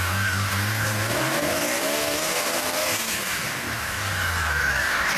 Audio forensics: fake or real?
fake